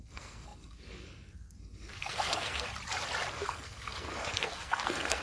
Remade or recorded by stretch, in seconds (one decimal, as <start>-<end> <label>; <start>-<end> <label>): 0.0-2.7 remade; 2.7-3.3 recorded; 3.3-5.2 remade